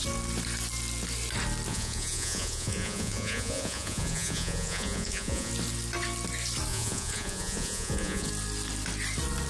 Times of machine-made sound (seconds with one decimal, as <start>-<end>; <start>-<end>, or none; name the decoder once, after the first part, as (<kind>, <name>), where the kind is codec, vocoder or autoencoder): 1.7-5.5 (vocoder, Vocos); 6.7-8.3